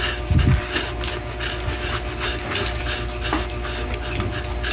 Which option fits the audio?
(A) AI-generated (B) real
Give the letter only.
B